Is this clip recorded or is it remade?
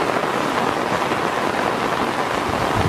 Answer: recorded